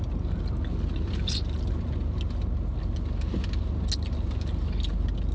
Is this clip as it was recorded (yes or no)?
yes